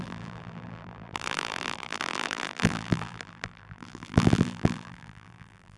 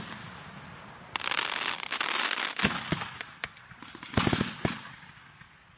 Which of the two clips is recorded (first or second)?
second